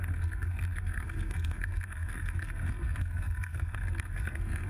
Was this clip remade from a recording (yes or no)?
yes